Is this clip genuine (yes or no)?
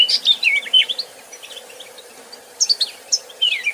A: yes